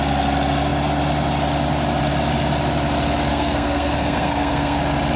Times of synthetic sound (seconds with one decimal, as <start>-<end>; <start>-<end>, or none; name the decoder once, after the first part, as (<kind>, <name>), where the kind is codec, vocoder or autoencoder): 3.3-4.8 (codec, SNAC)